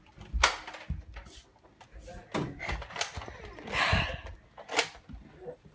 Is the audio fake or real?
real